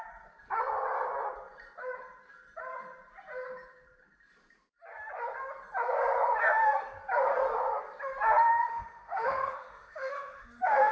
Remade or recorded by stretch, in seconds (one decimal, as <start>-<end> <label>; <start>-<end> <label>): 0.0-8.7 recorded; 8.7-10.9 remade